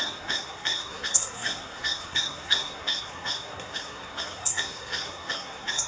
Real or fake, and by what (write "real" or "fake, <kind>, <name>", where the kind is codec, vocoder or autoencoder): fake, codec, SNAC